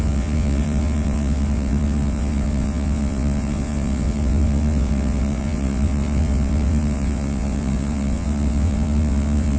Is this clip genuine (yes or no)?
no